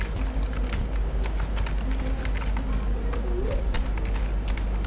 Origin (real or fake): real